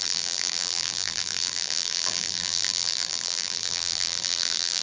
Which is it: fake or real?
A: fake